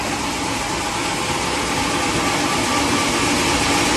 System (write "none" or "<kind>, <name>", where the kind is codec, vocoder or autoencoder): none